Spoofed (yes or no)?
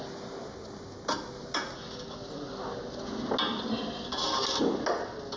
no